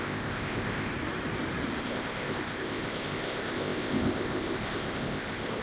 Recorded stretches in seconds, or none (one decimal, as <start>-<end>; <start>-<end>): 0.9-1.8